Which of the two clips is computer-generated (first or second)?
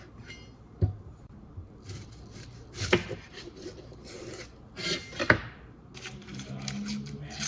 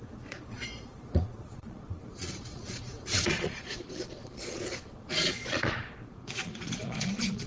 second